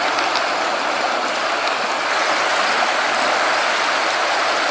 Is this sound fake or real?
real